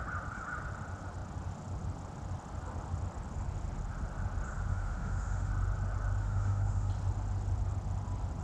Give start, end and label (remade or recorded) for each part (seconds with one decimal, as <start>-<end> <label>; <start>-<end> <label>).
0.0-4.7 recorded; 4.7-5.5 remade; 5.5-6.2 recorded; 6.2-6.9 remade; 6.9-8.4 recorded